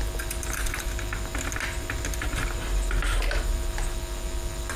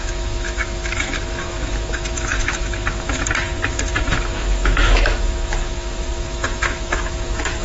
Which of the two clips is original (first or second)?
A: first